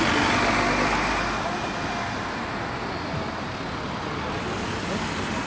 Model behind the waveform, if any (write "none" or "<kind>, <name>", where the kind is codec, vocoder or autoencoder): none